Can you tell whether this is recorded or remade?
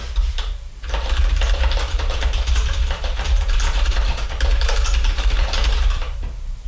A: remade